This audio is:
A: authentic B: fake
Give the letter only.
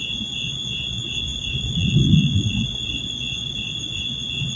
B